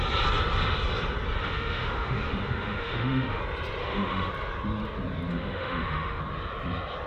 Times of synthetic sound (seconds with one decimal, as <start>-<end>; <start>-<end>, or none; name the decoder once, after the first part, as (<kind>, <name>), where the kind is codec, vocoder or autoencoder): 1.4-3.4 (autoencoder, DAC-VAE); 3.8-4.3; 5.3-6.2